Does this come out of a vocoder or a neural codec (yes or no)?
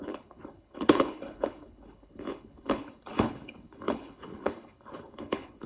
yes